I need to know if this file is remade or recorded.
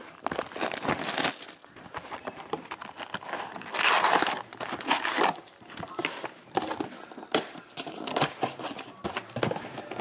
recorded